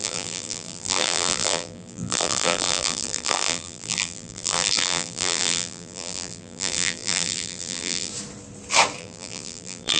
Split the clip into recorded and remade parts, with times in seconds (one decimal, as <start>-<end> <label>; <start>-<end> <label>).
0.0-8.1 remade; 8.1-9.0 recorded; 9.0-10.0 remade